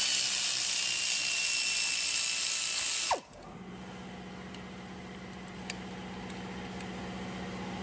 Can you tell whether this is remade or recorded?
recorded